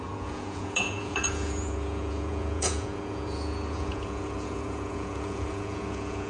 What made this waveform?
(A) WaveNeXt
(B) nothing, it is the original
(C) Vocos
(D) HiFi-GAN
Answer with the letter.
C